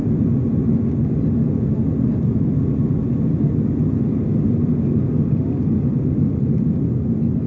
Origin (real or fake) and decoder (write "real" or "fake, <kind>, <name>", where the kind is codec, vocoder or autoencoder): real